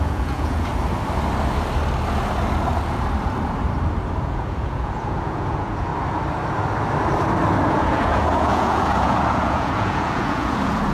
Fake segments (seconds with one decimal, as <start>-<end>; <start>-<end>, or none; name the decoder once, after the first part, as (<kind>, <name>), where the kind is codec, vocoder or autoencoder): 0.0-0.7 (vocoder, Vocos); 4.2-5.9; 7.7-10.9